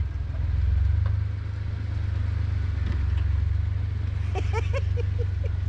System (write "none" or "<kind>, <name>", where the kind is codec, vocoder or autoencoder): none